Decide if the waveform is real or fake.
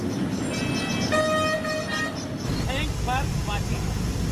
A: real